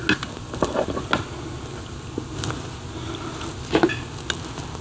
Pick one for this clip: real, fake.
real